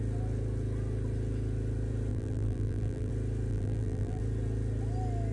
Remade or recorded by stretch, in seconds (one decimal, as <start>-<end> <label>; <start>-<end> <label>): 0.0-2.1 recorded; 2.1-3.1 remade; 3.1-3.5 recorded; 3.5-4.2 remade; 4.2-5.3 recorded